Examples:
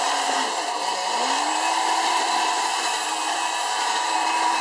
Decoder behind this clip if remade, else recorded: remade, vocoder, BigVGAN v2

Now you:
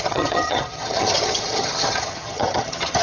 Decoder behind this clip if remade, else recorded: remade, vocoder, HiFi-GAN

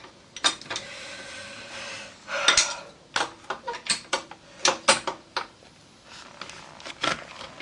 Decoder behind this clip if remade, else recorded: recorded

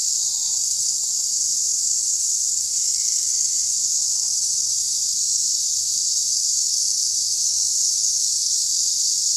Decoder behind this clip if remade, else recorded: remade, codec, SNAC